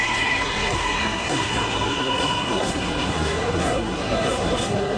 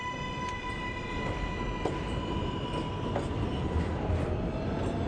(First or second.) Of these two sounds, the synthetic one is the first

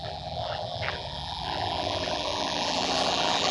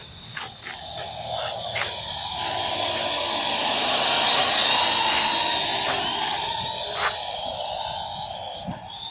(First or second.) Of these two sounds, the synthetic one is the first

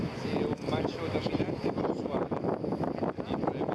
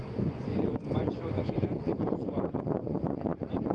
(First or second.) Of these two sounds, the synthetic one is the second